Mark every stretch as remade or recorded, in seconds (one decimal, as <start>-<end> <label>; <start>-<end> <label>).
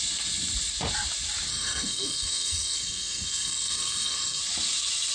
0.0-1.5 recorded; 1.5-4.4 remade; 4.4-5.1 recorded